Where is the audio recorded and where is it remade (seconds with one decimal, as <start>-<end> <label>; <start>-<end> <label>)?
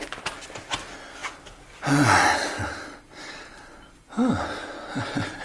0.0-5.4 recorded